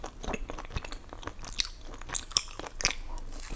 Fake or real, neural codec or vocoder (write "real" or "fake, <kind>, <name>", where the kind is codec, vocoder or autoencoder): real